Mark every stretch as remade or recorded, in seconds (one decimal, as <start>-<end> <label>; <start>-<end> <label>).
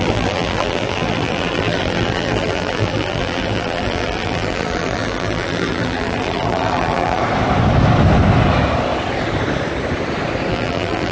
0.0-7.2 remade; 7.2-10.5 recorded; 10.5-11.1 remade